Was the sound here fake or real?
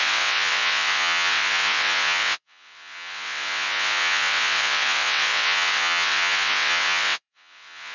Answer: fake